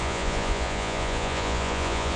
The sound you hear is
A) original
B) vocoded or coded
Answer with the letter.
B